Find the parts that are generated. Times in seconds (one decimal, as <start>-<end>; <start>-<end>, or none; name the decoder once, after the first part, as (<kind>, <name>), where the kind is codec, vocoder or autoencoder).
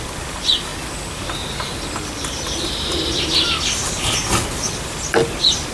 none